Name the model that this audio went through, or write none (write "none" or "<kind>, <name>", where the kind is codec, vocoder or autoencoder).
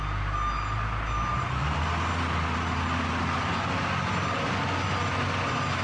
none